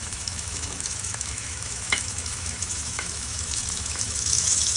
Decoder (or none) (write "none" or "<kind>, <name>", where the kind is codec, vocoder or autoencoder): autoencoder, DAC-VAE